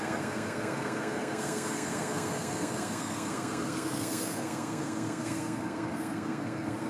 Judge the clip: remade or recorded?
remade